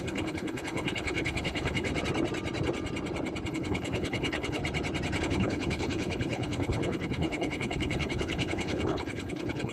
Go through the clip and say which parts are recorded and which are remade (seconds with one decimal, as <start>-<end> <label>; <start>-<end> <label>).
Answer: 0.0-1.9 remade; 1.9-3.5 recorded; 3.5-4.6 remade; 4.6-5.2 recorded; 5.2-9.7 remade